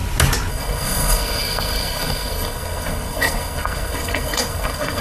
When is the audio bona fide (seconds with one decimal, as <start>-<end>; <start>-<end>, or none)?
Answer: 0.0-0.5